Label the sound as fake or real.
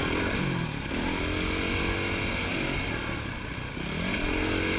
real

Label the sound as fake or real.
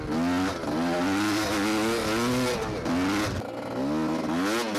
real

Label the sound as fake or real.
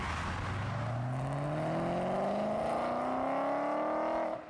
real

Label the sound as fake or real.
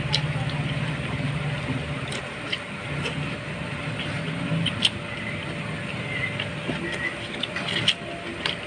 real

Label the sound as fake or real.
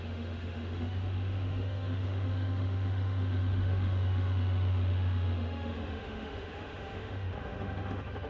fake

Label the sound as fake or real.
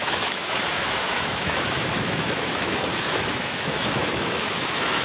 fake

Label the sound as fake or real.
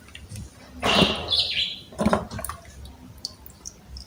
real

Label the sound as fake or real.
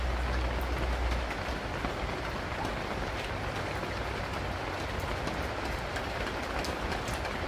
real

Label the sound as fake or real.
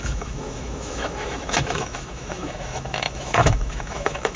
fake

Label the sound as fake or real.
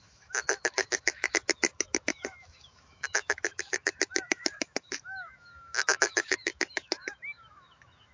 fake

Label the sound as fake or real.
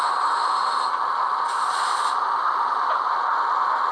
real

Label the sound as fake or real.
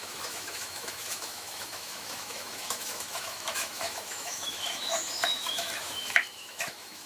fake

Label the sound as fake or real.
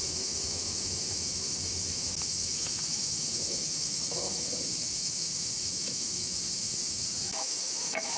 fake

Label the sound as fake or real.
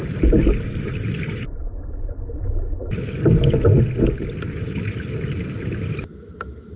real